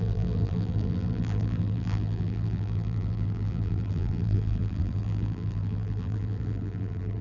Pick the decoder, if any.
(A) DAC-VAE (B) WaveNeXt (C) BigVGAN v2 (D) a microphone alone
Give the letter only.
C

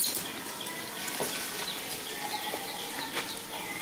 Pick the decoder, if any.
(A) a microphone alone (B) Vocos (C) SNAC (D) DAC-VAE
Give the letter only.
A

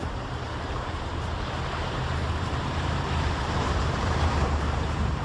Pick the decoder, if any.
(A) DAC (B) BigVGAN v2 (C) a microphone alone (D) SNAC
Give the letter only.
B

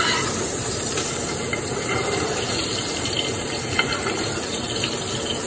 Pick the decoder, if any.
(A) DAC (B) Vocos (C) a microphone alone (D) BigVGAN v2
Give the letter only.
D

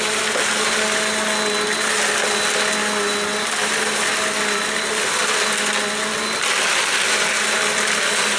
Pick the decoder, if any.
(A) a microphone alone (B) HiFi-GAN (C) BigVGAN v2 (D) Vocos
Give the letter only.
A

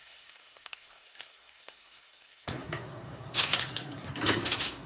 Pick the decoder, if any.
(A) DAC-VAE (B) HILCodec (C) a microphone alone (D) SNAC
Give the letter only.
D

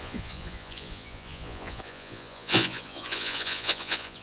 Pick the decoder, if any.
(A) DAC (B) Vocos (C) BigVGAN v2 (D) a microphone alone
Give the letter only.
B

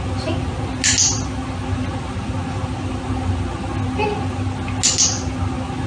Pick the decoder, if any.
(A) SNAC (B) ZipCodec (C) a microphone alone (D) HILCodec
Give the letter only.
C